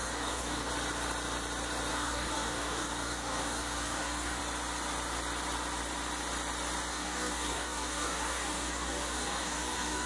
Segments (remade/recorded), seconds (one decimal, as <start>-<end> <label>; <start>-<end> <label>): 0.0-0.7 remade; 0.7-1.9 recorded; 1.9-4.4 remade; 4.4-6.9 recorded; 6.9-10.1 remade

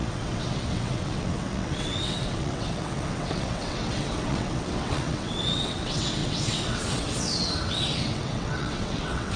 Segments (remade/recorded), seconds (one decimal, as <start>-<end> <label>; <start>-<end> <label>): 0.0-9.4 remade